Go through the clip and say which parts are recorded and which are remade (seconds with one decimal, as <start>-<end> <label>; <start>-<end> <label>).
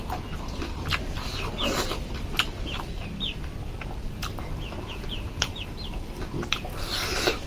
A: 0.0-4.2 remade; 4.2-4.8 recorded; 4.8-7.5 remade